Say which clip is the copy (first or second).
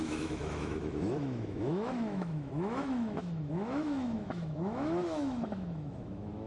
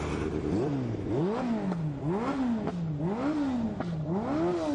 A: first